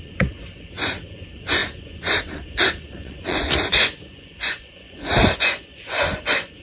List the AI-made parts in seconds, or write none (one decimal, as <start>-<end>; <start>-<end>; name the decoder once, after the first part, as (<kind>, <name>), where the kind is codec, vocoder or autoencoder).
0.0-6.6 (vocoder, Vocos)